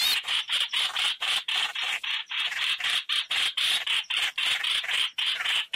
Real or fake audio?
fake